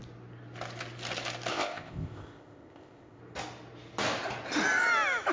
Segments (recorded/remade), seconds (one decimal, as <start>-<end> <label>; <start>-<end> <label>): 0.0-1.5 recorded; 1.5-3.2 remade; 3.2-5.3 recorded